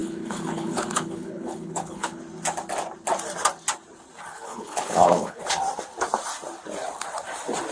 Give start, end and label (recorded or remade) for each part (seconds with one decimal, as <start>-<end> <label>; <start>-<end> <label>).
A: 0.0-2.2 remade; 2.2-4.3 recorded; 4.3-5.4 remade; 5.4-7.7 recorded